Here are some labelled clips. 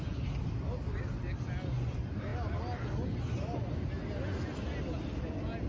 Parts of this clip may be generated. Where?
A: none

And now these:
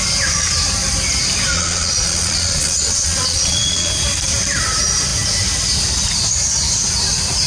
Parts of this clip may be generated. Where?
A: 1.5-3.9 (vocoder, Vocos)

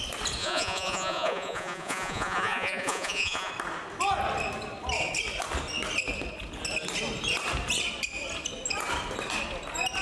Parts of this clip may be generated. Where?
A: 0.4-3.5 (vocoder, Vocos)

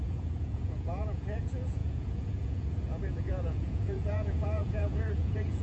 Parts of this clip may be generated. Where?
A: 0.0-5.6 (vocoder, Vocos)

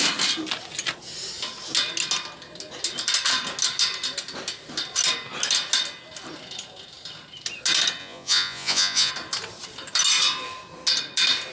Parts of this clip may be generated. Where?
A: 8.0-9.1 (vocoder, Vocos)

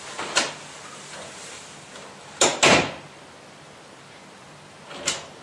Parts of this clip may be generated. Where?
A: none